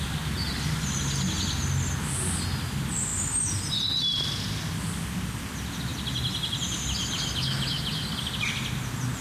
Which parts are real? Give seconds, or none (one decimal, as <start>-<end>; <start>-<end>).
0.0-9.2